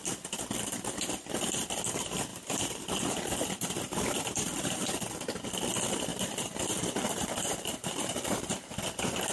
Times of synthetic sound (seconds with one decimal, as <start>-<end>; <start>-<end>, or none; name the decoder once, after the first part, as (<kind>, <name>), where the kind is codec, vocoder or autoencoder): 2.3-4.9 (vocoder, BigVGAN v2); 6.1-8.7